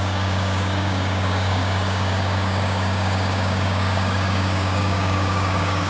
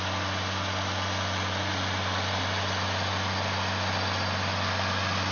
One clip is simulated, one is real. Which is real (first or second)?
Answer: second